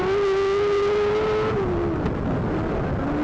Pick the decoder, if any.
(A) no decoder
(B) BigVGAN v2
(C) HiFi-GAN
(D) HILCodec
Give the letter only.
A